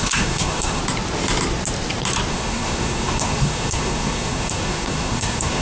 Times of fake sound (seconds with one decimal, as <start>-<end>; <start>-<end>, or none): 0.0-0.8; 2.3-5.6